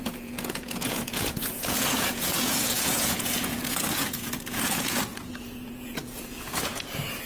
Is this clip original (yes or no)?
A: no